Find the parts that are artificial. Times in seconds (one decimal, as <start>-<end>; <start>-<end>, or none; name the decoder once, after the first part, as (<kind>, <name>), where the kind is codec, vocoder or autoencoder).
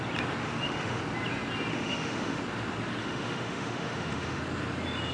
0.4-1.0 (autoencoder, DAC-VAE); 1.7-2.4; 3.0-4.4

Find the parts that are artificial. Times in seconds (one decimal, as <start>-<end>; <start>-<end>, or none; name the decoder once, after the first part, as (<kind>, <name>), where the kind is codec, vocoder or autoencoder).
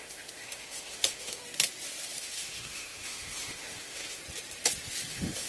0.0-1.4 (autoencoder, DAC-VAE); 2.2-4.2; 5.1-5.5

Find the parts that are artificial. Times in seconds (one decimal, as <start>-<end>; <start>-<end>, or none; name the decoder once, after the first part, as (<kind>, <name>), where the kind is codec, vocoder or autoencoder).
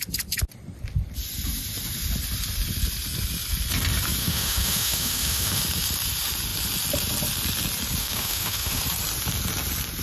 4.2-5.6 (autoencoder, DAC-VAE); 8.0-8.8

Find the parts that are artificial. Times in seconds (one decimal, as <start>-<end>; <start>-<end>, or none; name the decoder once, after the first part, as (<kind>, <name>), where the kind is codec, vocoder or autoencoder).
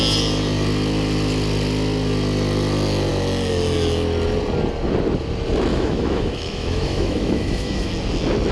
5.7-7.9 (autoencoder, DAC-VAE)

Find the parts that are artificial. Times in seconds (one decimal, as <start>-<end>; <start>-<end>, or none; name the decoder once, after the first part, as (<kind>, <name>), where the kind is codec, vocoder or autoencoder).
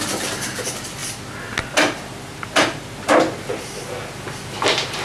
none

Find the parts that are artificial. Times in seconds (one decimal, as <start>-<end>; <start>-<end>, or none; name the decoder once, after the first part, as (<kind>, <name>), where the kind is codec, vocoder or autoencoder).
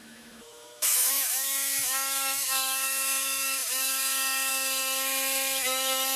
0.0-6.2 (autoencoder, DAC-VAE)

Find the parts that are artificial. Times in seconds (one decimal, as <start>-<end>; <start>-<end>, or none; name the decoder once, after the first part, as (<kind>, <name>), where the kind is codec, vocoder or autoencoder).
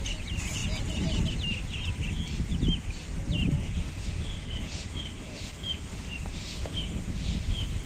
3.6-7.9 (autoencoder, DAC-VAE)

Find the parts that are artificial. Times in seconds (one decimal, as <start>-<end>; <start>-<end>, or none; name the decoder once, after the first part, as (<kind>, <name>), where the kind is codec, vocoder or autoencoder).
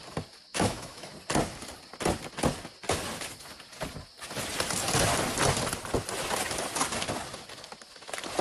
0.5-1.1 (autoencoder, DAC-VAE)